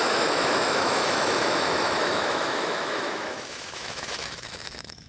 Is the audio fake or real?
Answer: fake